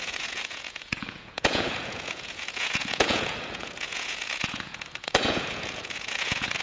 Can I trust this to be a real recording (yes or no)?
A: no